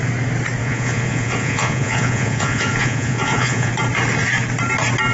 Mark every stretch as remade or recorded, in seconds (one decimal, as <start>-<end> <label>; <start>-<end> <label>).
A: 0.0-0.6 recorded; 0.6-3.7 remade; 3.7-5.1 recorded